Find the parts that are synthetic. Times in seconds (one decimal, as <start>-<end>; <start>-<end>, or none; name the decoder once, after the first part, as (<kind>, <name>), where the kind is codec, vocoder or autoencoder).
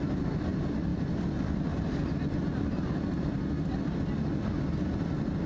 none